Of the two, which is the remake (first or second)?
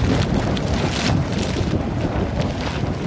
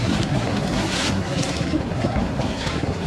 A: second